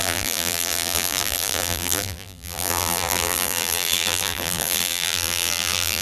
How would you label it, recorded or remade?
remade